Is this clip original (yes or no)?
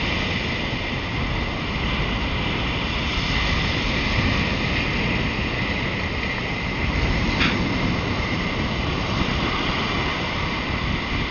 yes